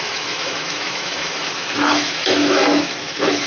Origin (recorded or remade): remade